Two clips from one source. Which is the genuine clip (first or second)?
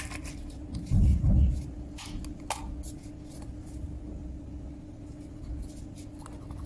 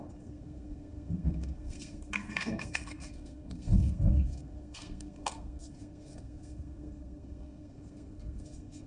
first